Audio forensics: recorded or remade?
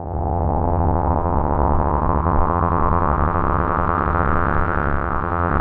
remade